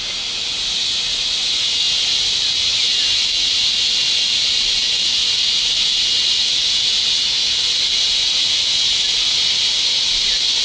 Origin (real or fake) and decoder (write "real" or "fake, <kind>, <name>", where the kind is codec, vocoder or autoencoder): real